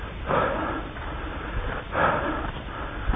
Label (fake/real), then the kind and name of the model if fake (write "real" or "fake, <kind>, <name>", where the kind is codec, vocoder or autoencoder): real